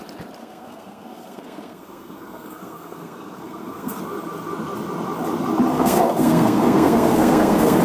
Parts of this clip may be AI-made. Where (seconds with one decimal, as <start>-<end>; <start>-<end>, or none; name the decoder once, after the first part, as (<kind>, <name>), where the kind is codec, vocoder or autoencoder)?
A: 0.4-4.0 (codec, SNAC); 5.7-7.8